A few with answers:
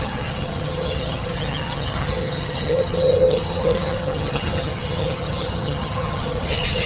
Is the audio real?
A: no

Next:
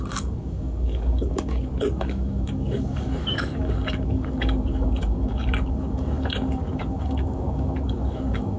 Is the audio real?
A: no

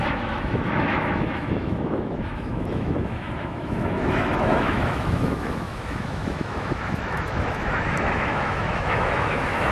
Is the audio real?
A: no